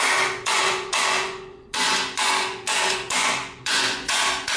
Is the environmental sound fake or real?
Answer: fake